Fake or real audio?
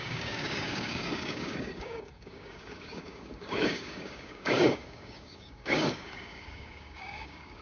fake